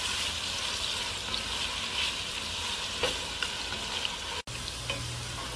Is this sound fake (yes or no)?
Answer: no